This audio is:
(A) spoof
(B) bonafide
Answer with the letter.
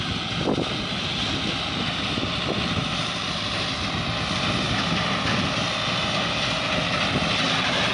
B